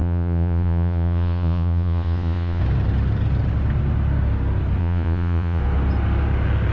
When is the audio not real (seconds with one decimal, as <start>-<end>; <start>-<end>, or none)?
0.0-2.6; 4.8-5.6